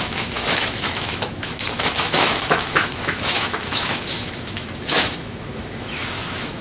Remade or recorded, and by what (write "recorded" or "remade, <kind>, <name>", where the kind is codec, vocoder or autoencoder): remade, autoencoder, DAC-VAE